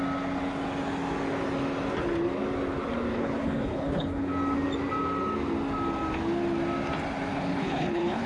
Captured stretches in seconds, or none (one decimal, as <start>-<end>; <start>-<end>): 0.0-3.1; 4.3-7.3